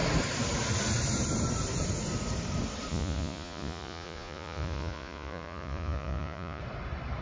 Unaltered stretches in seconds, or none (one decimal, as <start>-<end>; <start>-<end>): 0.0-2.9; 6.6-7.2

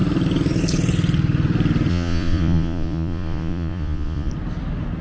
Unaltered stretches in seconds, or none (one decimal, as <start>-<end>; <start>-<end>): 0.0-1.9; 4.3-5.0

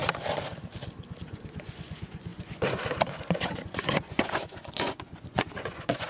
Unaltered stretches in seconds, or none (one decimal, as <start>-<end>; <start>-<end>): 0.0-1.2

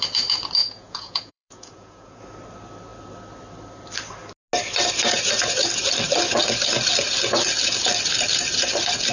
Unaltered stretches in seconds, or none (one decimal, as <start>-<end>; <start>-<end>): 0.0-0.6; 2.2-9.1

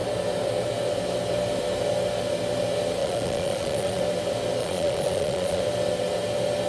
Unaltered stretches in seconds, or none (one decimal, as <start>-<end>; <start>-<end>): 0.0-3.0; 4.0-4.6; 5.6-6.7

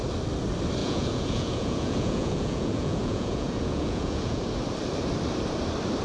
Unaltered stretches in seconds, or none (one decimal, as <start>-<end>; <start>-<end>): 0.0-0.8; 4.4-6.0